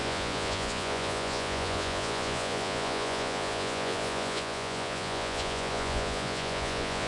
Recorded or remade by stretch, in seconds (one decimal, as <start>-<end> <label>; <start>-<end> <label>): 0.0-7.1 remade